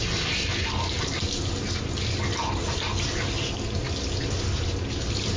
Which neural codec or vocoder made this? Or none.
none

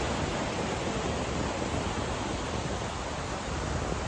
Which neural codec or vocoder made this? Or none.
none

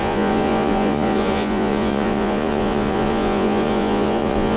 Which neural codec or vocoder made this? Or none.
vocoder, Vocos